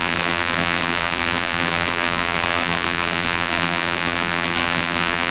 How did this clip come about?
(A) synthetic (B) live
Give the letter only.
A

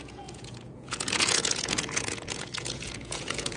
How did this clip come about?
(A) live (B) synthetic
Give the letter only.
B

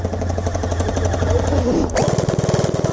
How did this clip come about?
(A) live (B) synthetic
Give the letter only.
A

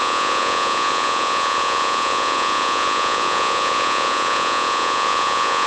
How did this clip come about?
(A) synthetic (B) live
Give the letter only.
A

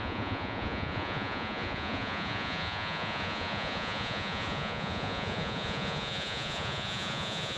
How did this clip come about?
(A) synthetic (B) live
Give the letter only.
A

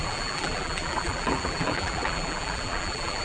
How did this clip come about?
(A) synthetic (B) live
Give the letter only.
A